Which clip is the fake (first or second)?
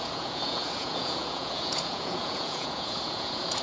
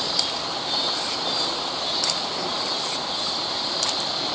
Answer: first